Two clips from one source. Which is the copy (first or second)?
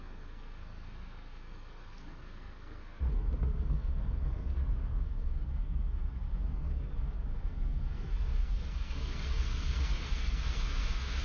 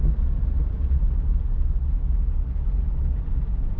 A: first